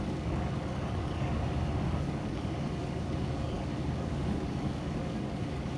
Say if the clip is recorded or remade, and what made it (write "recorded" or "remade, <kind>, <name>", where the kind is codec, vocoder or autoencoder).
remade, codec, DAC